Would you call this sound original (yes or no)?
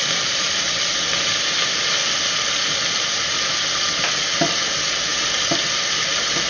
yes